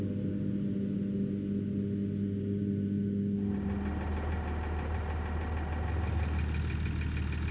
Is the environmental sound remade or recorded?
recorded